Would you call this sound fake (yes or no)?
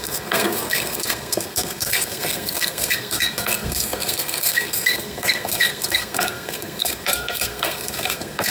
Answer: yes